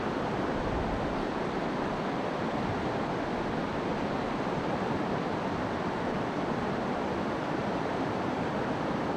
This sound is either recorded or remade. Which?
remade